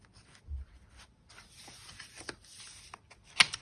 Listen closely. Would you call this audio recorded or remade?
recorded